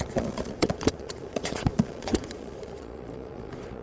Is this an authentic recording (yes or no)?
no